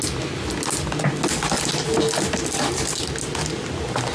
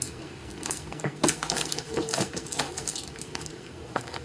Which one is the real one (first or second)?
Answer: first